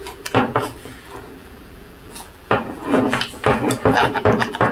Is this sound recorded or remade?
remade